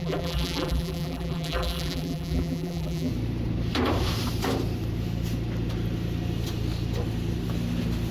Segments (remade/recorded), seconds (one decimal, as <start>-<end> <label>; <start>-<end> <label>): 0.0-3.1 remade; 3.1-8.1 recorded